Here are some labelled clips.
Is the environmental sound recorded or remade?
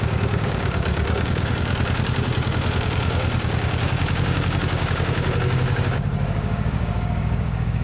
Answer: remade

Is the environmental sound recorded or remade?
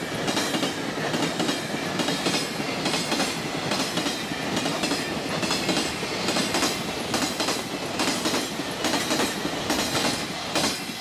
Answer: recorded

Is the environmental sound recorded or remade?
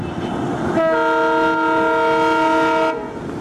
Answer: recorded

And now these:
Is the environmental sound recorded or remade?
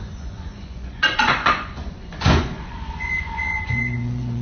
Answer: remade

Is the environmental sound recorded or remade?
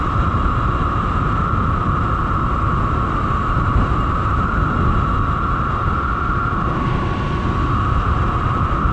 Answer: recorded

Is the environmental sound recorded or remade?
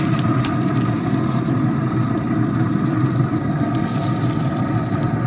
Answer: remade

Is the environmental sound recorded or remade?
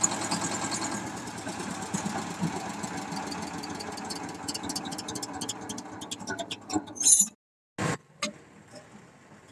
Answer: recorded